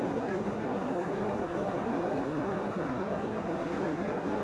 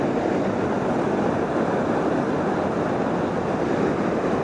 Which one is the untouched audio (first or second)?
second